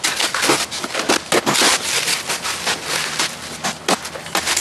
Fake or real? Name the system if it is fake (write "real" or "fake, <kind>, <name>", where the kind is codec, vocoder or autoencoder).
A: real